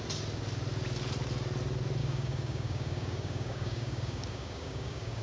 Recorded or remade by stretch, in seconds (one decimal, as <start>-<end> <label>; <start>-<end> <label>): 0.0-2.0 recorded; 2.0-5.2 remade